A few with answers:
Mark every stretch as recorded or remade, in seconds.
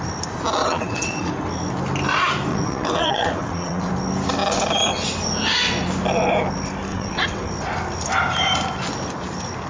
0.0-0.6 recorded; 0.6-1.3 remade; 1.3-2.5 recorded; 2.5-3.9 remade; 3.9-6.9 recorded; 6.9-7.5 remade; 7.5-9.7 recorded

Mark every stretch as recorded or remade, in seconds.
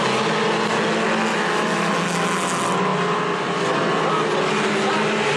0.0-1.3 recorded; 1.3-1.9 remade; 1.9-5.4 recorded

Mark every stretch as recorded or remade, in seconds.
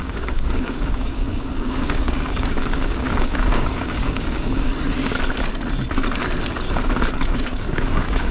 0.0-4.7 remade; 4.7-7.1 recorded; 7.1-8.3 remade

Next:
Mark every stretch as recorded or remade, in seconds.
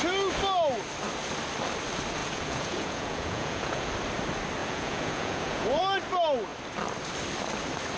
0.0-2.2 recorded; 2.2-3.9 remade; 3.9-4.6 recorded; 4.6-5.8 remade; 5.8-8.0 recorded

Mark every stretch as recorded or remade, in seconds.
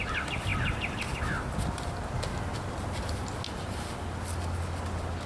0.0-5.3 recorded